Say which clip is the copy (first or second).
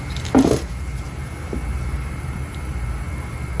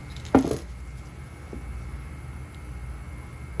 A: first